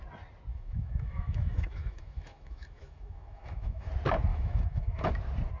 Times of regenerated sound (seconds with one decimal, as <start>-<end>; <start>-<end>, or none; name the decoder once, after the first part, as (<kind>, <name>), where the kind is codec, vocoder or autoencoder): 0.5-3.9 (autoencoder, DAC-VAE); 4.3-5.1